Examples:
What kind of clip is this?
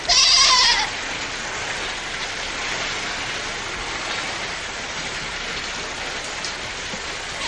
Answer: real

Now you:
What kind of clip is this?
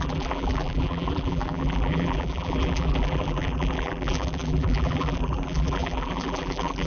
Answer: fake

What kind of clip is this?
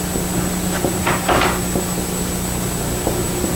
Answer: real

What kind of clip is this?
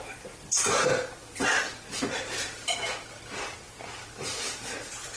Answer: fake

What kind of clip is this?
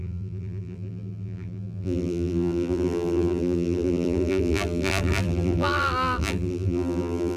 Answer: fake